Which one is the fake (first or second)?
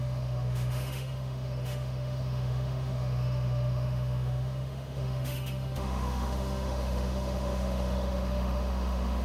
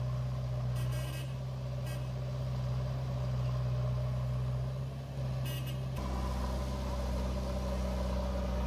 first